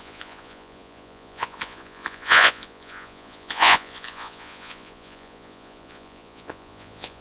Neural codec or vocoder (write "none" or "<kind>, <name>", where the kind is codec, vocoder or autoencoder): vocoder, Vocos